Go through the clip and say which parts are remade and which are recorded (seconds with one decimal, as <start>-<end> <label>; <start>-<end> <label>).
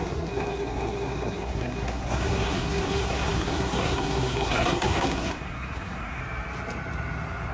0.0-6.2 remade; 6.2-7.5 recorded